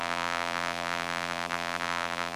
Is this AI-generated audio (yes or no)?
yes